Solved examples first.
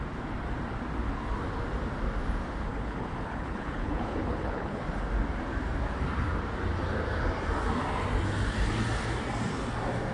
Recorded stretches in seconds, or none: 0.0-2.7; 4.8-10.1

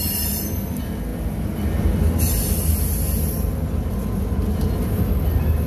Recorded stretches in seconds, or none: 0.0-5.7